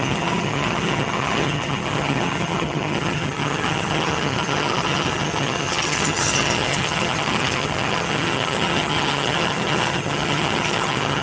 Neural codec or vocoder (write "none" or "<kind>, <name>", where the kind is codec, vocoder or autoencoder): vocoder, HiFi-GAN